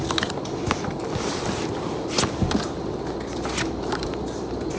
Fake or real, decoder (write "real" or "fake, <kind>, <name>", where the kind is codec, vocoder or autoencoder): real